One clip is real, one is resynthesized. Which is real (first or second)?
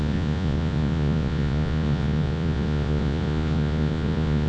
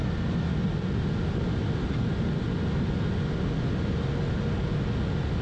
second